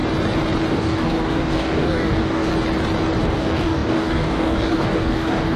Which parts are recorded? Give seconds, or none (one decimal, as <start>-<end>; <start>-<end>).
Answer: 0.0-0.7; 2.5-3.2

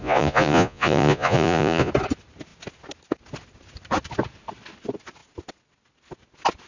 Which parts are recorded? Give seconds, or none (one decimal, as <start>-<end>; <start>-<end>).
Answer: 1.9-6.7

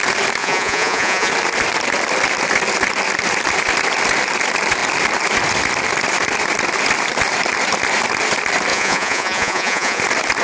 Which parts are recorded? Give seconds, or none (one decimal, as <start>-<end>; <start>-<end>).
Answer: 0.0-0.4; 1.3-8.7; 10.0-10.4

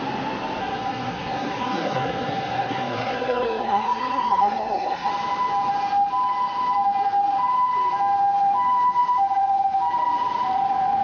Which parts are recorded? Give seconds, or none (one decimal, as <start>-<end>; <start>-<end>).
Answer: 0.0-0.6; 5.1-11.0

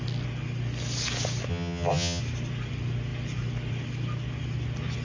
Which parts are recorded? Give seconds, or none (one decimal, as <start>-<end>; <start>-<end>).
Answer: 0.0-1.5; 2.2-5.0